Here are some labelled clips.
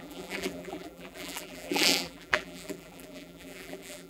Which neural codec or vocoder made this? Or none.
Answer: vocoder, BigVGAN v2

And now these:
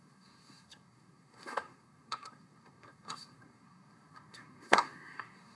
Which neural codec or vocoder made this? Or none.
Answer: codec, SNAC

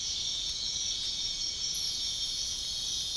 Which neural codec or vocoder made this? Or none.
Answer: vocoder, Vocos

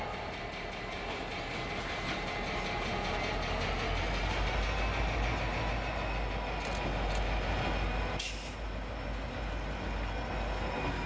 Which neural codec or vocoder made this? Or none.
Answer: none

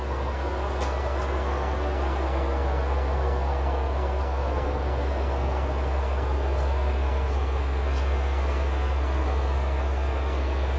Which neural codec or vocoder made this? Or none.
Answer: codec, SNAC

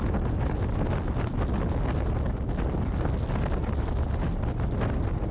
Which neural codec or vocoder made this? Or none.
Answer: none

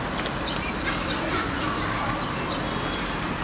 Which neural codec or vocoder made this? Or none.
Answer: vocoder, BigVGAN v2